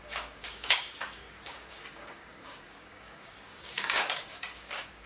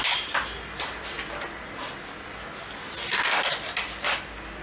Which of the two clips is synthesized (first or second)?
first